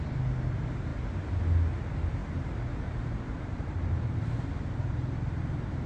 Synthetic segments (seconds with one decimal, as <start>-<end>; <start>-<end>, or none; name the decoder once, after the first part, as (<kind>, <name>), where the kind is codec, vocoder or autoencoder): 0.9-1.4 (vocoder, BigVGAN v2); 2.2-5.4